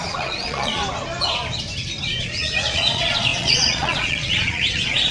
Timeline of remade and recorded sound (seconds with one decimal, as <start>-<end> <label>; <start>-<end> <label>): 0.0-0.8 remade; 0.8-2.2 recorded; 2.2-5.1 remade